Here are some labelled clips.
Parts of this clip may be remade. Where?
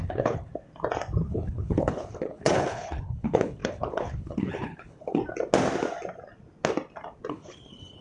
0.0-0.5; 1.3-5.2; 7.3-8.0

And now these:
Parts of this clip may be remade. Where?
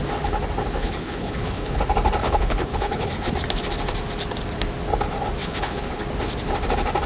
0.8-1.8; 2.2-3.3; 5.4-6.0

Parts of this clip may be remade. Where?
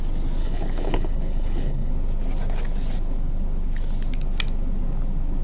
0.4-1.9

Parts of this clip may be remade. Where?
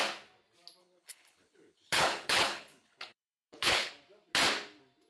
0.8-3.9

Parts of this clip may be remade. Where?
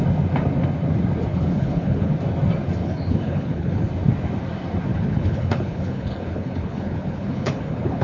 1.3-2.1; 2.8-3.9; 4.9-8.0